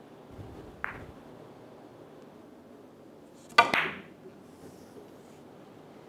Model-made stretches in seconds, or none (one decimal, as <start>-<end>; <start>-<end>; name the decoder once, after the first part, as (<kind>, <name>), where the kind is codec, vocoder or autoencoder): none